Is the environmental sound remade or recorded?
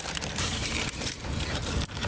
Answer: remade